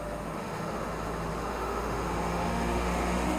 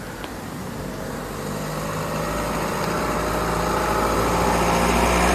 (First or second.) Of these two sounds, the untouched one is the second